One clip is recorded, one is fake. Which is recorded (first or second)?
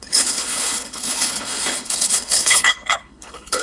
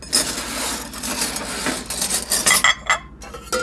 second